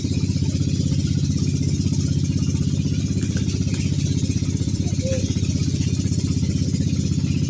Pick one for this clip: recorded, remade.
recorded